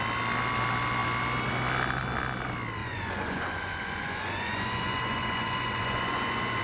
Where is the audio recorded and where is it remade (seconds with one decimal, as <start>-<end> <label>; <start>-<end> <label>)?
0.0-2.8 recorded; 2.8-6.6 remade